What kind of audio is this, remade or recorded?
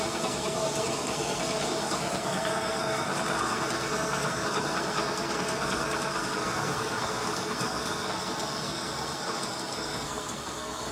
remade